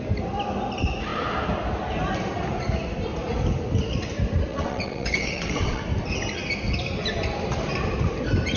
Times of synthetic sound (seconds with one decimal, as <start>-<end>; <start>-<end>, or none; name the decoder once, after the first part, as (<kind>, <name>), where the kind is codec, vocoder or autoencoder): 4.5-5.8 (vocoder, WaveNeXt)